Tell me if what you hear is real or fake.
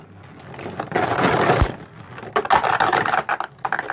real